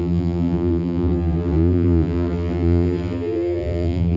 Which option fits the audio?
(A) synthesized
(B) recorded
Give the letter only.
A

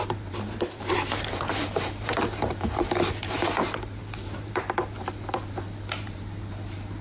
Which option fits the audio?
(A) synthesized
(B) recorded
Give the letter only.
A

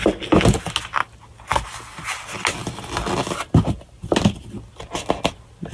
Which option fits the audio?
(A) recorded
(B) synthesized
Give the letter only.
A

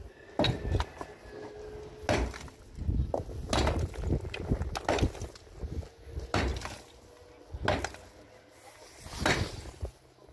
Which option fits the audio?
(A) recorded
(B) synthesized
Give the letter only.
A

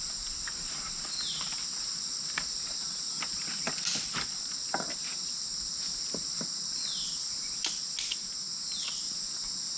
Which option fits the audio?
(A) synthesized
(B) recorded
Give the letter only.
B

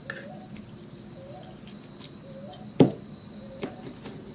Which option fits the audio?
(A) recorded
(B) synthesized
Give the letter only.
A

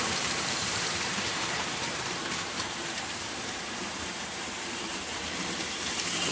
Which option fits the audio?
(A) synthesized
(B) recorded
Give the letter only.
A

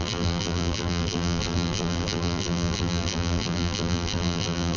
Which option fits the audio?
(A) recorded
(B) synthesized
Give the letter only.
B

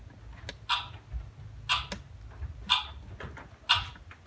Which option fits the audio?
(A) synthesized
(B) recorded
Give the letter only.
B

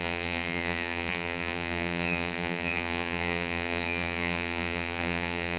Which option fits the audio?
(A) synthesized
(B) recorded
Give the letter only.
A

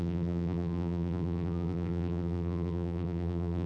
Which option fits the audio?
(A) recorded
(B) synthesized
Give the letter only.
B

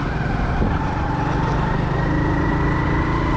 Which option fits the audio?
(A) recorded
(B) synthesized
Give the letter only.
A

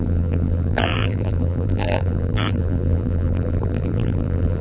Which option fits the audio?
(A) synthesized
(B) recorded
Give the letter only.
A